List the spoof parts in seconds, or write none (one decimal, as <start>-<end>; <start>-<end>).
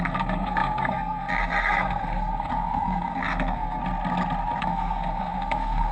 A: 0.0-3.8; 4.6-5.9